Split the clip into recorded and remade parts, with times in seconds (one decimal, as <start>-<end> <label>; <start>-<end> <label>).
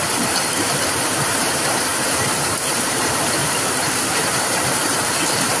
0.0-5.6 remade